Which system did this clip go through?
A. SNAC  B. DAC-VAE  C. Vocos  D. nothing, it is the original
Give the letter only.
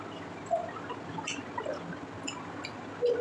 D